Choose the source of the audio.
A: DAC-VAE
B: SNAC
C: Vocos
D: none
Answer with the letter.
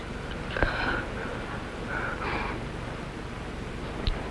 D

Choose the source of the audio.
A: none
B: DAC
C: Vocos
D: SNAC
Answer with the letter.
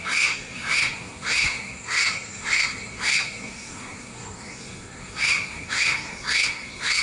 D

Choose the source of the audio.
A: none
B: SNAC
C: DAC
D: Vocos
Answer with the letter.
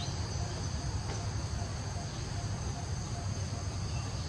A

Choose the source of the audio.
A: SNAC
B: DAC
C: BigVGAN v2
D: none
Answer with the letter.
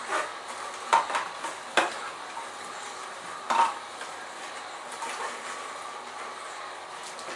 D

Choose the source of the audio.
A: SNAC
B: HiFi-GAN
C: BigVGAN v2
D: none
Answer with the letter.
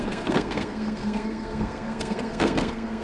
A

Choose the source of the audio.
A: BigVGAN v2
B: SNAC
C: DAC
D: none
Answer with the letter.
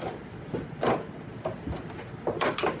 D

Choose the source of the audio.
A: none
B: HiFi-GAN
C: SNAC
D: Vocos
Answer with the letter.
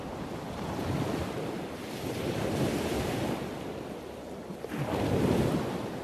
A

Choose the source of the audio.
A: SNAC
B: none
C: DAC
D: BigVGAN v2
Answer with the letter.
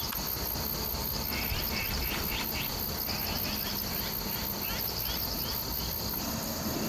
B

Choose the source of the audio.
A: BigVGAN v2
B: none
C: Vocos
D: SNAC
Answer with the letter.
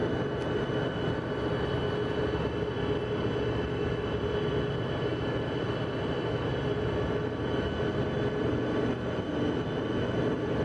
B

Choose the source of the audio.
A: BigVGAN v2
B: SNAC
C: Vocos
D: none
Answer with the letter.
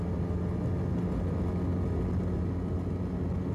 D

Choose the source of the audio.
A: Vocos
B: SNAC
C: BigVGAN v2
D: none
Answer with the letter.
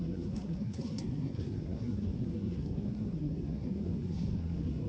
B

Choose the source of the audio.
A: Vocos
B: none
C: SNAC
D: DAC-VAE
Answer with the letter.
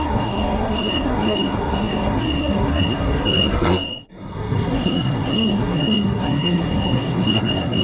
C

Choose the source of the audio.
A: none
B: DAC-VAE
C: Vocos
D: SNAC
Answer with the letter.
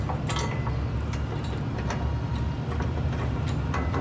A